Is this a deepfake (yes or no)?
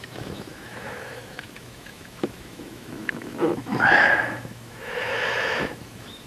yes